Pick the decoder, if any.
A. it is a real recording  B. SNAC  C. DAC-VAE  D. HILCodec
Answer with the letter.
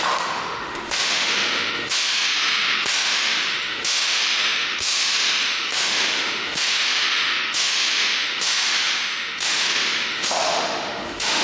C